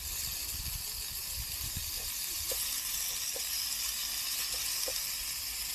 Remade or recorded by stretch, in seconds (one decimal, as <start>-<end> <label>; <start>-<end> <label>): 0.0-1.2 recorded; 1.2-1.9 remade; 1.9-5.7 recorded